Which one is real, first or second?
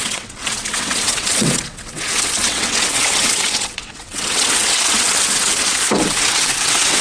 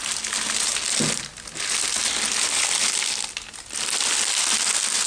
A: second